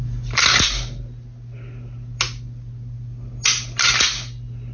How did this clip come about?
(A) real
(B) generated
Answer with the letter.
A